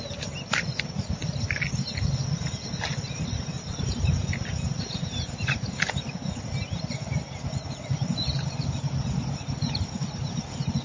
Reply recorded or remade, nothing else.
recorded